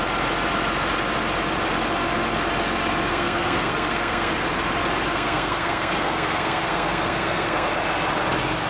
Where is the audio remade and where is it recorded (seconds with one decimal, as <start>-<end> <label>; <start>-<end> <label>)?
0.0-3.1 recorded; 3.1-4.3 remade; 4.3-5.1 recorded; 5.1-7.7 remade; 7.7-8.7 recorded